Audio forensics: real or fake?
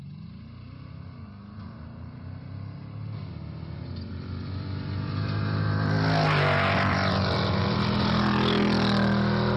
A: real